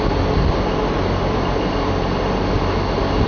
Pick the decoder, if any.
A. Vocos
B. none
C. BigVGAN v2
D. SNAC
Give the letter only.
B